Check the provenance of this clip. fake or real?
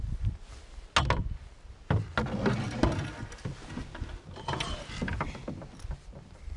real